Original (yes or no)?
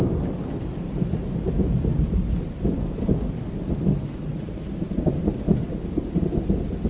yes